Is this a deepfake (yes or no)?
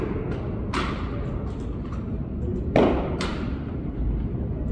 no